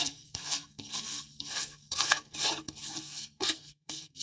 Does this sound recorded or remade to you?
remade